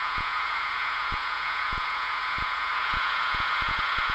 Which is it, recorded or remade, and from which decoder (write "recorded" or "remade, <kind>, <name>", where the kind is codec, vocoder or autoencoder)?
remade, vocoder, Vocos